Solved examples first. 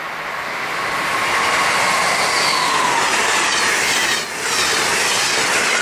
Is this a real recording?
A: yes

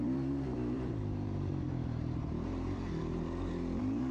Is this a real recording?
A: no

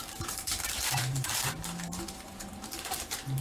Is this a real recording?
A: no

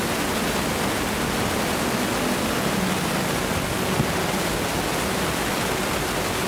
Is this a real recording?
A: yes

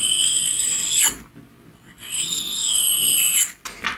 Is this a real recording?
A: yes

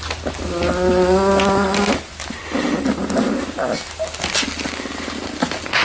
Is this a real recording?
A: yes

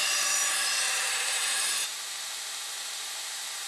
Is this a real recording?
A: no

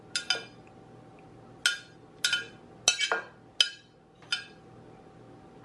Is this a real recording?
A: yes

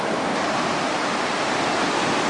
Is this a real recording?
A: no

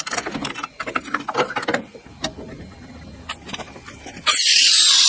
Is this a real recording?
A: yes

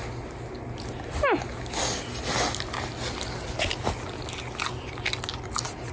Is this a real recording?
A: yes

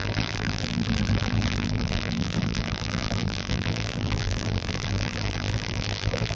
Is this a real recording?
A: no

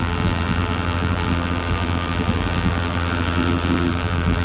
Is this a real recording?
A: no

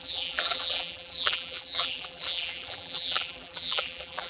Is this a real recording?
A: no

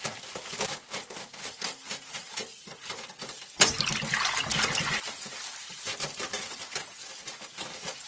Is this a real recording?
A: yes